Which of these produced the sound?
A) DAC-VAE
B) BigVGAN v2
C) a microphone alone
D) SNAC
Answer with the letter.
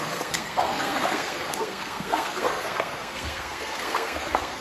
D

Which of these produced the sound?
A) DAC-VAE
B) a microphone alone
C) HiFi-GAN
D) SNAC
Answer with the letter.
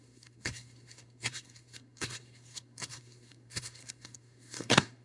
D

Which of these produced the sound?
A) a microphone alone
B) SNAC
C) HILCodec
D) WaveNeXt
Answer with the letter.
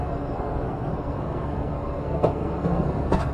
B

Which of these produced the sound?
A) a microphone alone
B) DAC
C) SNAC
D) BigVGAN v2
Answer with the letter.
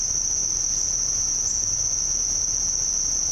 A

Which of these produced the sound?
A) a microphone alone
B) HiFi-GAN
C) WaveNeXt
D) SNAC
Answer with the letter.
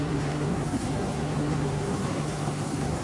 D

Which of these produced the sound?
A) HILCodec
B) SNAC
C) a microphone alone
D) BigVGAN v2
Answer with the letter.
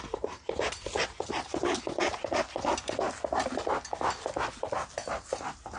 C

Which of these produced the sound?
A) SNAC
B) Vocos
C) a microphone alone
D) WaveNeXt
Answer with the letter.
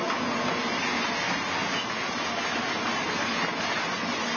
C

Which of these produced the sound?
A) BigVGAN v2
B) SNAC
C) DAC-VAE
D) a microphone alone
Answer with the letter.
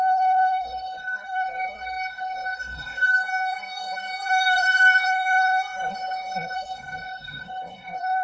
B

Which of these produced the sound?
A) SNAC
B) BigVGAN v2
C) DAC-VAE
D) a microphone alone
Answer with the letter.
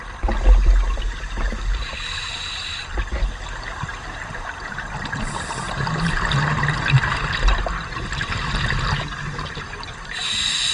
D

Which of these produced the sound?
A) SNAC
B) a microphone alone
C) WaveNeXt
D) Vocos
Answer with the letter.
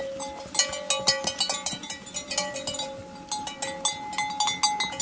B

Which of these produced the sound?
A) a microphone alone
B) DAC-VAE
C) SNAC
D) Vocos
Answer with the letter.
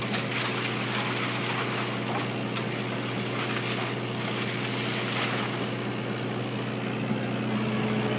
A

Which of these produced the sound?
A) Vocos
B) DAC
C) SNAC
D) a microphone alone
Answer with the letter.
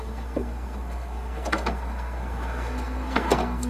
C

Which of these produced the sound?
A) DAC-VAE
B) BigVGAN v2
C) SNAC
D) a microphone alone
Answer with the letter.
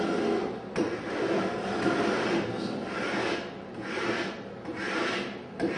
D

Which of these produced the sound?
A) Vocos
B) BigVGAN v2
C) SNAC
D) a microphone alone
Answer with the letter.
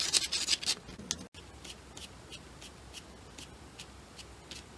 D